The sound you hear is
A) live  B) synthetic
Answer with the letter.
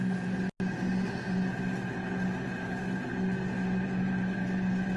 A